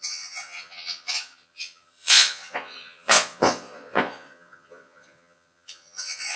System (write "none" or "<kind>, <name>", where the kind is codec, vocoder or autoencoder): vocoder, Vocos